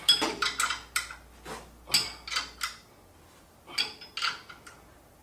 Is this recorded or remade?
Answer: recorded